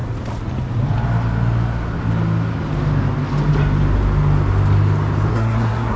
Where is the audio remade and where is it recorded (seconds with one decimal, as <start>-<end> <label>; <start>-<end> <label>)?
0.0-5.3 recorded; 5.3-6.0 remade